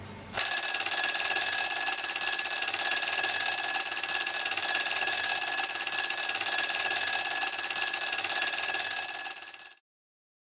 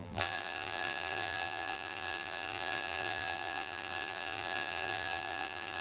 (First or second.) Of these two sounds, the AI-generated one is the second